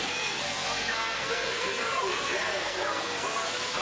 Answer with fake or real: fake